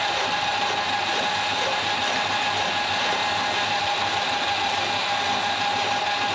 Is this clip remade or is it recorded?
recorded